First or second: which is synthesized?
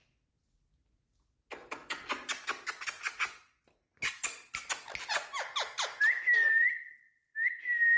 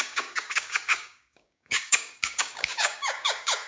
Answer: second